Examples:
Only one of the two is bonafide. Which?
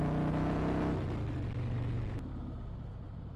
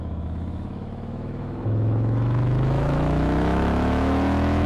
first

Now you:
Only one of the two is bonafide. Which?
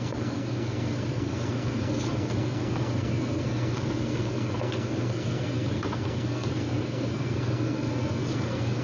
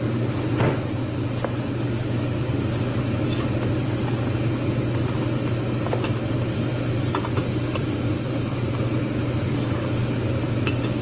second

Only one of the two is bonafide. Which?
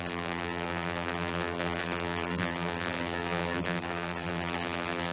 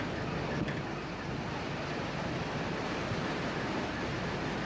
second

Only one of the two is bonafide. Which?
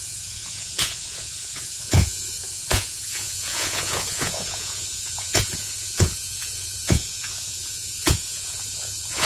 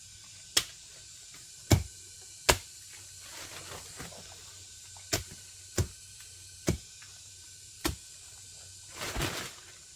second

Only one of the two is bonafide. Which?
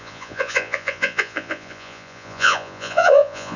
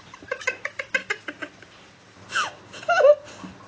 second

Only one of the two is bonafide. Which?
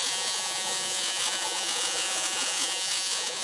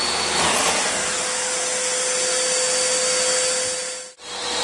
second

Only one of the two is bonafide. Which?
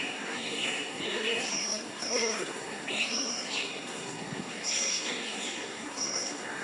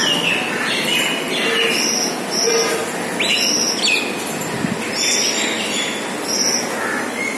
second